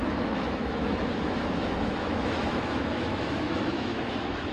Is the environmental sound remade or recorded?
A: remade